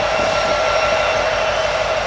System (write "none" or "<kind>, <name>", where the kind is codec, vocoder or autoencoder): none